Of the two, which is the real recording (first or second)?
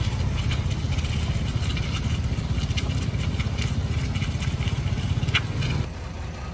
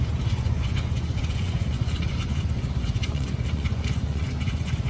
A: first